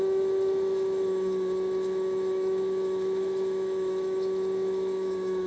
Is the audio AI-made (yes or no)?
yes